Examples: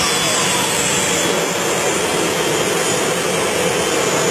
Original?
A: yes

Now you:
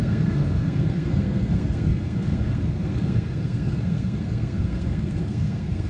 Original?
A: no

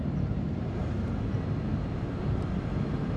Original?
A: no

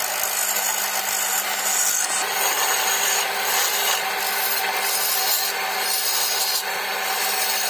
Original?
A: yes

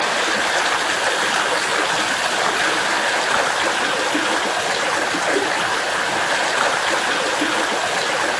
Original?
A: yes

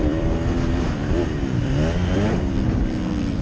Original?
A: no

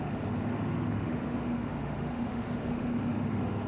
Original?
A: no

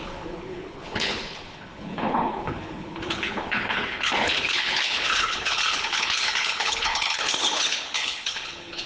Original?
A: no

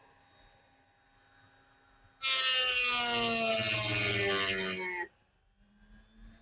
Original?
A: yes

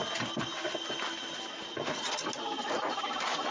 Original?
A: yes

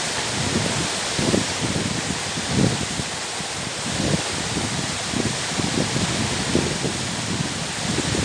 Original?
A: yes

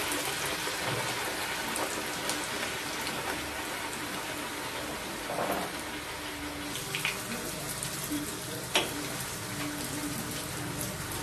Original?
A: yes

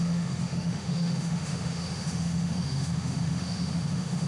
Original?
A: no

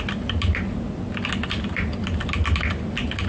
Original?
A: yes